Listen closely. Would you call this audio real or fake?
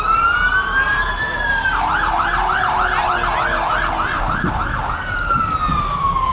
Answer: real